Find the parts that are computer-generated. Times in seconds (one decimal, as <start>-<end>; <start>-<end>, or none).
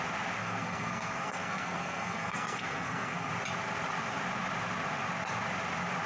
0.4-3.3